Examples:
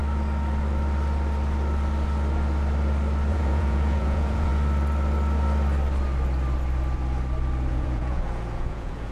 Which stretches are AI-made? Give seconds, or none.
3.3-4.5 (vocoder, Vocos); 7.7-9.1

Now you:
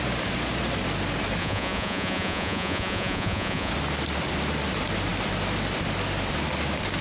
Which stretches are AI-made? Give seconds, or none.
1.4-3.7 (vocoder, Vocos)

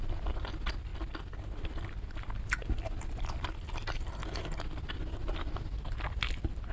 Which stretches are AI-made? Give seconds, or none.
none

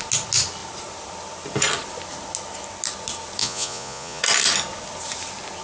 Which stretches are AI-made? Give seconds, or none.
3.4-4.2 (vocoder, Vocos)

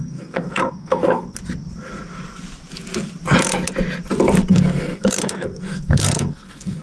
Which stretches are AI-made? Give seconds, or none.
0.0-1.4 (codec, SNAC); 4.5-6.8

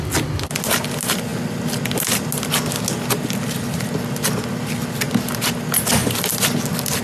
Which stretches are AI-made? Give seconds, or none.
6.0-6.5 (vocoder, BigVGAN v2)

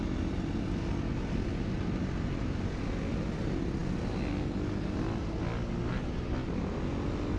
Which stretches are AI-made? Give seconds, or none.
none